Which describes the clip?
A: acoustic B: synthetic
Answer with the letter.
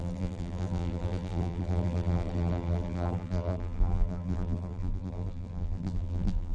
B